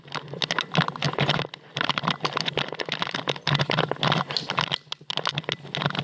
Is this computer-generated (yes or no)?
no